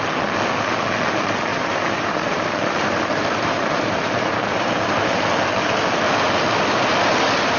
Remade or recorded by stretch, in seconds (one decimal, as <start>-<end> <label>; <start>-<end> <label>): 0.0-1.5 recorded; 1.5-5.3 remade; 5.3-7.6 recorded